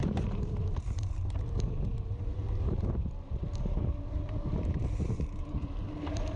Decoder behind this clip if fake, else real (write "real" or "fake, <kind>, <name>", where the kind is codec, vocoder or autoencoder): fake, vocoder, BigVGAN v2